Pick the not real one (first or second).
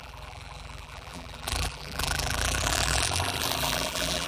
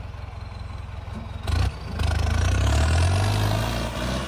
first